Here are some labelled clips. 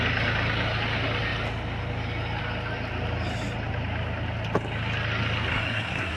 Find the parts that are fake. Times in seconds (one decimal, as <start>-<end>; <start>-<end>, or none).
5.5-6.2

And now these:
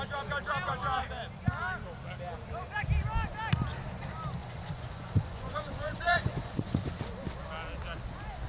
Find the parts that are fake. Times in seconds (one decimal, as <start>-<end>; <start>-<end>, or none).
4.4-6.6

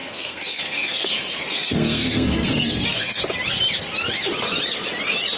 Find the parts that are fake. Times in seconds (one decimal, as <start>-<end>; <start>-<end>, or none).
0.0-3.2

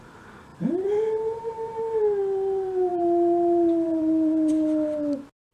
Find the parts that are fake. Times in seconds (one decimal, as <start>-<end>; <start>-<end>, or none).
0.5-2.0; 2.9-4.5

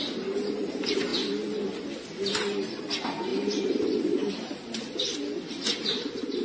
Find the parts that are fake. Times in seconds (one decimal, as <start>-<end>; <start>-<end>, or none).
none